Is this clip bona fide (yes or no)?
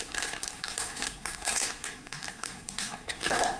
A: no